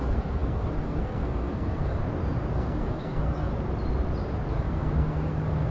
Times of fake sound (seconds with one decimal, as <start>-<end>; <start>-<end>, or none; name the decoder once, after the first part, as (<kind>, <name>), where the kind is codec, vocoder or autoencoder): 0.0-2.0 (codec, SNAC); 2.5-3.5; 4.5-5.7